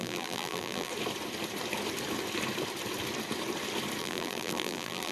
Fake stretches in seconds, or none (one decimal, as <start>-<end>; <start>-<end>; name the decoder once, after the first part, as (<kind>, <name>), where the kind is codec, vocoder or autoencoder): 0.0-0.9 (vocoder, BigVGAN v2); 4.0-5.1